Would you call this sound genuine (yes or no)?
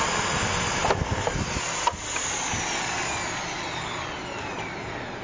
yes